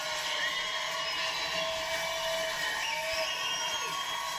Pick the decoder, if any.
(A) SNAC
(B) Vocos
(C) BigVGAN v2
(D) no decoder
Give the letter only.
D